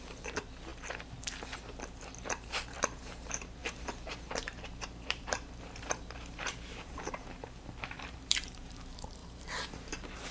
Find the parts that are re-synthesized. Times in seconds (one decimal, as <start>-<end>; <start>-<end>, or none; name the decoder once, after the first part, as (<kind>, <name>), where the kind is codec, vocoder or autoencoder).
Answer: 0.0-10.3 (vocoder, BigVGAN v2)